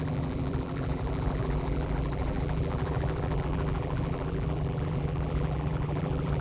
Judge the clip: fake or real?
fake